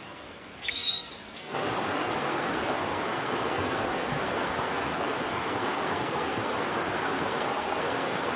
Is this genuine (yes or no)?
no